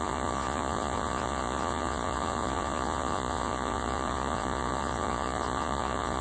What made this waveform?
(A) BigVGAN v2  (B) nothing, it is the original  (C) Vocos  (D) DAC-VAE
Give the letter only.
C